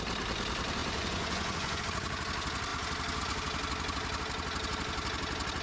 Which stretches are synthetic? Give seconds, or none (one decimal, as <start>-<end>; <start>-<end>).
0.8-1.8